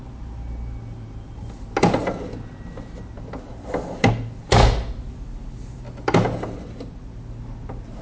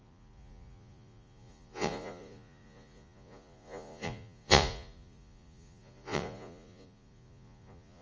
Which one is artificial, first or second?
second